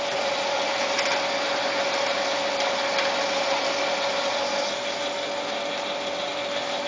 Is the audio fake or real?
real